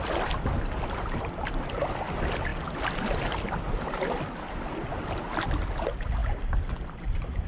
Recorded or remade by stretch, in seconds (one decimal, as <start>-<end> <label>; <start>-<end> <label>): 0.0-7.5 recorded